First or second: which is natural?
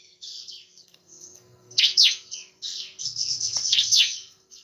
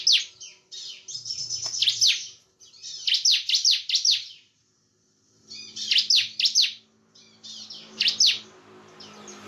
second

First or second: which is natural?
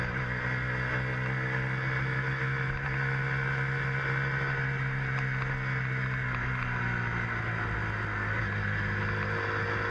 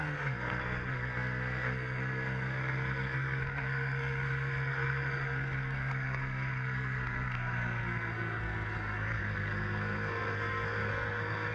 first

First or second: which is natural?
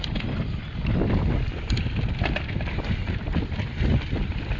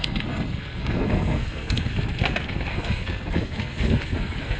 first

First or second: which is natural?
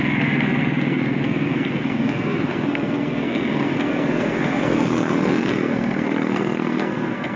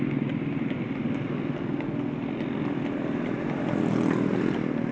second